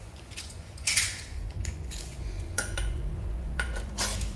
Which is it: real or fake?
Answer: fake